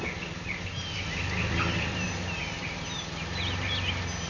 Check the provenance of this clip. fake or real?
real